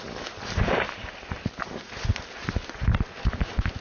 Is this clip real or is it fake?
real